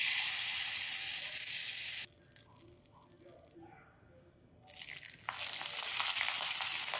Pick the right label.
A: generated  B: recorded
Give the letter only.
B